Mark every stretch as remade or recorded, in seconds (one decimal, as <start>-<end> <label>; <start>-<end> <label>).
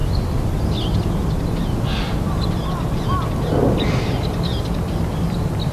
0.0-5.7 recorded